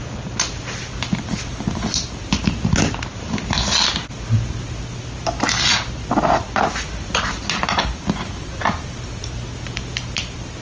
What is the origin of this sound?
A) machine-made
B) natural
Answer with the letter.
B